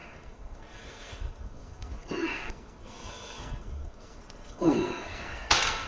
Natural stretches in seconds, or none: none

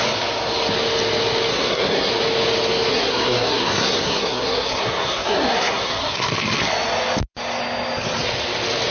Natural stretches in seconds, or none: 0.0-1.5; 2.1-2.9; 6.3-8.9

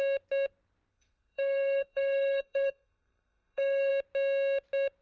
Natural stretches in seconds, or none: 0.0-0.9; 3.9-5.0

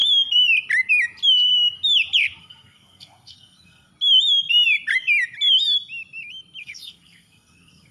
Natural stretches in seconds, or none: 0.0-2.4; 3.9-6.6

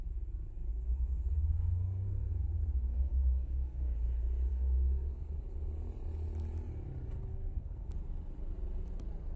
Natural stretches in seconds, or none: 0.0-0.7; 2.3-2.9; 3.9-4.5; 5.3-7.3; 7.9-9.4

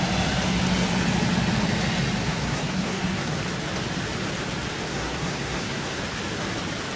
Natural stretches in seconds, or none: 0.0-2.2; 3.4-4.9; 6.0-7.0